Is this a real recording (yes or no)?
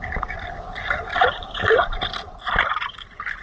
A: yes